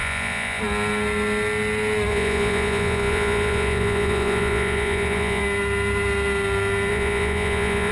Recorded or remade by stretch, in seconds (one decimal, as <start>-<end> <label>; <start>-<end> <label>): 0.0-0.6 remade; 0.6-2.1 recorded; 2.1-5.4 remade; 5.4-6.9 recorded; 6.9-7.9 remade